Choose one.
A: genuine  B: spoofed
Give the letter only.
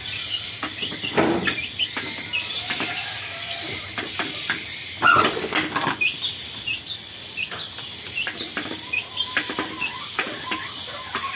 A